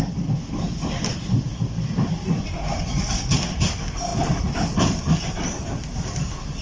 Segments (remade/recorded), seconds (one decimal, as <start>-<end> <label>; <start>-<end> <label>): 0.0-6.6 recorded